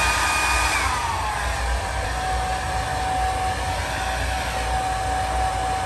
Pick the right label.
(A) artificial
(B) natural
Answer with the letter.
B